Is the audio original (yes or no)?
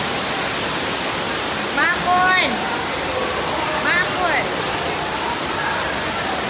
yes